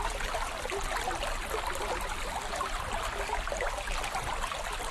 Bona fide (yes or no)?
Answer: yes